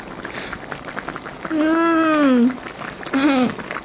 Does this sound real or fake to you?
real